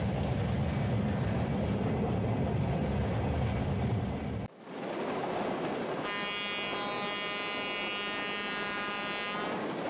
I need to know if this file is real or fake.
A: real